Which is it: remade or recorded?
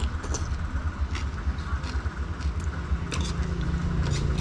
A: recorded